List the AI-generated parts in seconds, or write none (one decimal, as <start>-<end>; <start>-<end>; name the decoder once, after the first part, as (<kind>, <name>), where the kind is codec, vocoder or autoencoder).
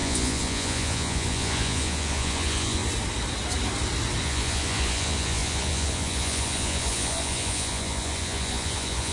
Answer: 0.0-2.8 (vocoder, Vocos); 4.2-9.1